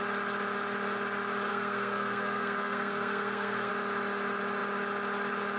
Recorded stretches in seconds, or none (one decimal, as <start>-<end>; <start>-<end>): 0.0-1.5; 3.7-5.6